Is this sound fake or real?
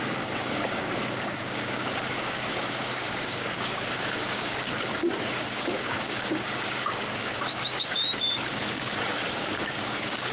fake